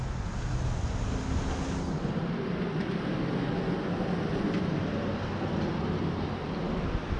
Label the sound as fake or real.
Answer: real